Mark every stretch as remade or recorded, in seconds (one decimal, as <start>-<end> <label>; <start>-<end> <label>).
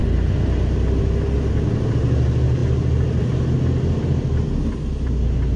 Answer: 0.0-5.6 recorded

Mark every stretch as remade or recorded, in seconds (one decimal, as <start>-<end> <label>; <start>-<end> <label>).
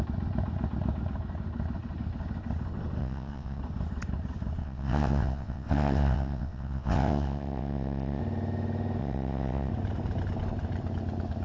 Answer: 0.0-3.0 recorded; 3.0-3.6 remade; 3.6-4.6 recorded; 4.6-8.2 remade; 8.2-9.0 recorded; 9.0-9.7 remade; 9.7-11.4 recorded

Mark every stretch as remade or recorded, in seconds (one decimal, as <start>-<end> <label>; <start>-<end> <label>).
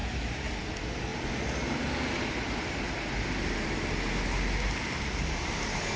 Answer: 0.0-6.0 recorded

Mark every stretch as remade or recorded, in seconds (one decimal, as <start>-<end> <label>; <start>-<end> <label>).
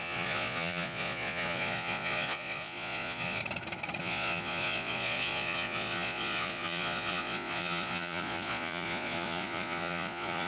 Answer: 0.0-3.4 remade; 3.4-4.0 recorded; 4.0-10.5 remade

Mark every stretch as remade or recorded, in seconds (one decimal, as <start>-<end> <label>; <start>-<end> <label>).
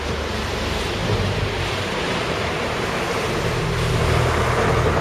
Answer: 0.0-1.0 recorded; 1.0-4.0 remade; 4.0-5.0 recorded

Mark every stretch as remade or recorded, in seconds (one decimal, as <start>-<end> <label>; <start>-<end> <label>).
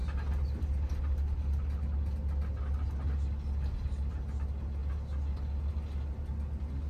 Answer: 0.0-6.9 recorded